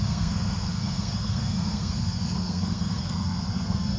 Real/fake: fake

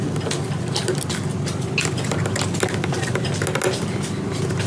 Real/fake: real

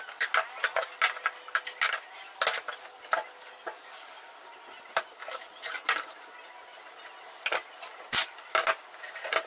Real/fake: real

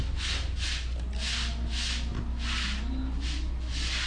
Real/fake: real